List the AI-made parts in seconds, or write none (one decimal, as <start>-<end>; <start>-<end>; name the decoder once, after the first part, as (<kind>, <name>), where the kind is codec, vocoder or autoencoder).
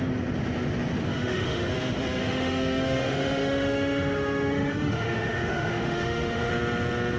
1.1-1.7 (autoencoder, DAC-VAE); 2.2-6.5